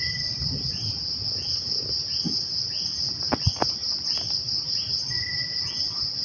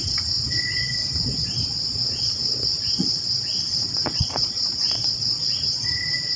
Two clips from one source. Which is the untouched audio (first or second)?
first